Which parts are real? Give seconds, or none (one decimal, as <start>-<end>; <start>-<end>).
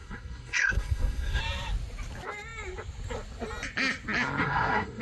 1.4-4.4